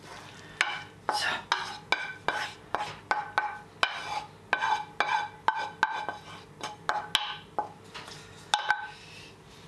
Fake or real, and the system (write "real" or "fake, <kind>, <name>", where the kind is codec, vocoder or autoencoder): real